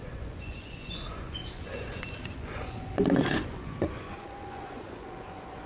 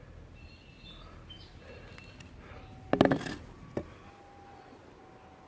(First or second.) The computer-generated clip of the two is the first